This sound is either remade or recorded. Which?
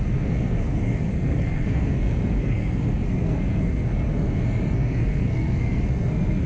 remade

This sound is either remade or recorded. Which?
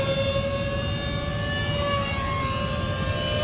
recorded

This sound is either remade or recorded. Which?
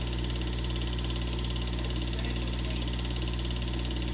recorded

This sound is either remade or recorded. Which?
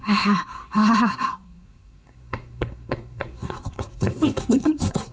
remade